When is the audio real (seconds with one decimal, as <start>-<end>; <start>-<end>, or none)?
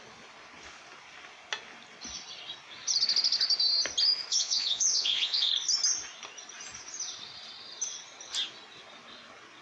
0.0-4.3; 5.5-9.6